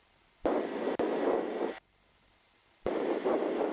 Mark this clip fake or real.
real